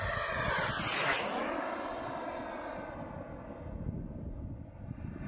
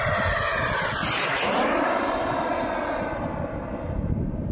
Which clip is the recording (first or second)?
first